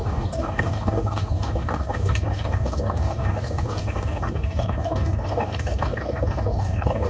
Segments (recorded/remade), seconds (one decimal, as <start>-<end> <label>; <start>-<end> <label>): 0.0-7.1 remade